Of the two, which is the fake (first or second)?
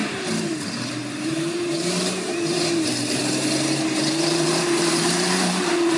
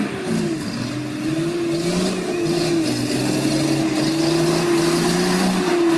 first